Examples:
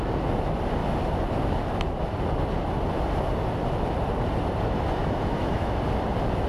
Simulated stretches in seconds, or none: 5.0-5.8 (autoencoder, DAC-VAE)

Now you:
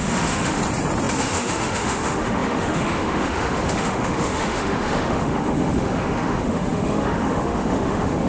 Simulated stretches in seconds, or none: 0.0-0.6 (autoencoder, DAC-VAE); 1.1-8.3

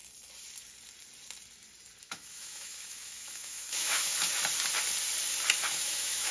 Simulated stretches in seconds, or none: 2.0-4.1 (autoencoder, DAC-VAE); 5.7-6.3